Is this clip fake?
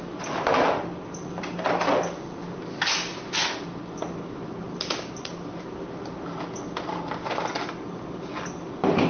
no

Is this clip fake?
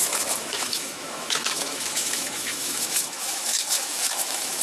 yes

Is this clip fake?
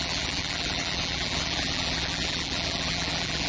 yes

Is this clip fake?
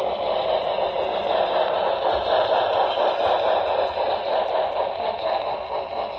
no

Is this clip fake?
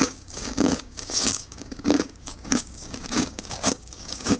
yes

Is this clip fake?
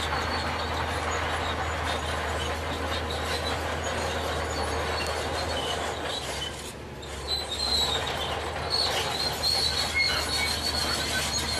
no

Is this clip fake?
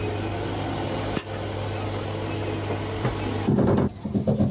no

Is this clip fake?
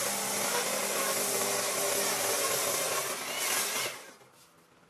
no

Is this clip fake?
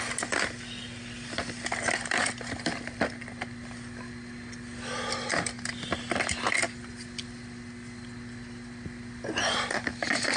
no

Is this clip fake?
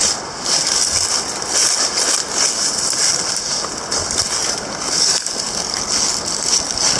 no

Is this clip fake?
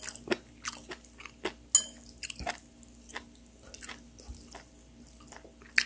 no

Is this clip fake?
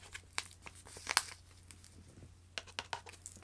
no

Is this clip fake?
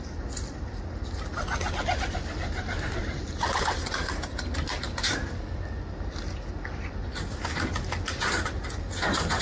no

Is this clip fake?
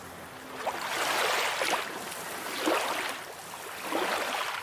no